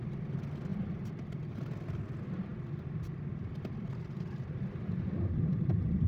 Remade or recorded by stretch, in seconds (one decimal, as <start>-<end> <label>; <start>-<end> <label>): 0.0-6.1 recorded